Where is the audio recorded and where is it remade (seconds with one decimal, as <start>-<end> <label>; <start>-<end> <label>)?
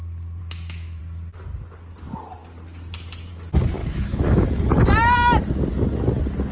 0.0-0.4 recorded; 0.4-1.0 remade; 1.0-3.8 recorded; 3.8-4.6 remade; 4.6-6.5 recorded